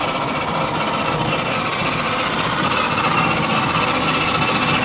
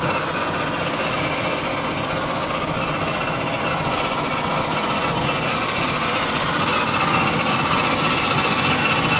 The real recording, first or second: first